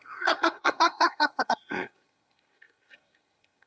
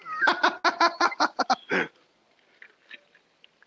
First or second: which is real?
second